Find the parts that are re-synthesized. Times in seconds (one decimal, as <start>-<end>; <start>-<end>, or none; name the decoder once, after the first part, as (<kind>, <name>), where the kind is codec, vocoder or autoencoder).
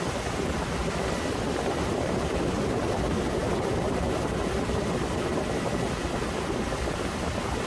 none